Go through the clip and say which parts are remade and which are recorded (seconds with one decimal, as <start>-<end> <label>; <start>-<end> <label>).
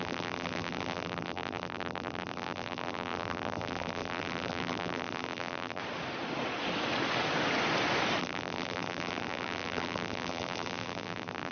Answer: 0.0-5.8 remade; 5.8-8.2 recorded; 8.2-11.5 remade